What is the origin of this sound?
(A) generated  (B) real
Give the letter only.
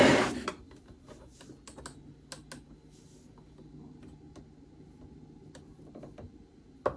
B